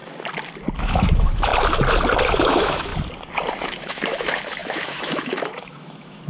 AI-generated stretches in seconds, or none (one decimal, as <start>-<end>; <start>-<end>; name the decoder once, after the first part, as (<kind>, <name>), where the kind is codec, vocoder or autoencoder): 0.8-1.5 (autoencoder, DAC-VAE); 2.4-2.9; 3.6-6.3